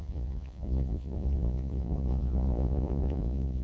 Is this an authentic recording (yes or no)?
no